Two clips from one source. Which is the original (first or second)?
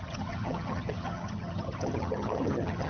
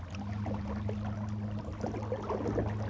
second